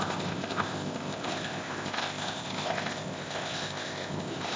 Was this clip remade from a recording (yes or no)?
yes